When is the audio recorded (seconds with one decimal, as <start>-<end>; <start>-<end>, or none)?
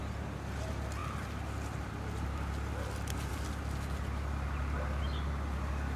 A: 0.0-6.0